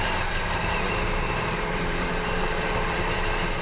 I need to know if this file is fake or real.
fake